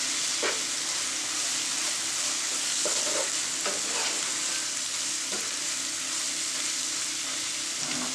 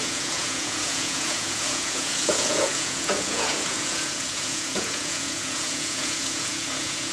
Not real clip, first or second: second